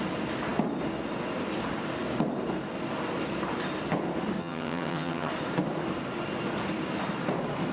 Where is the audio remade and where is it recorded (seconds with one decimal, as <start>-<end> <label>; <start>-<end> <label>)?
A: 0.0-4.4 recorded; 4.4-5.3 remade; 5.3-7.7 recorded